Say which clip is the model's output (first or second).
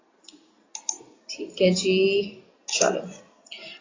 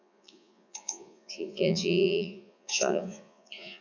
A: second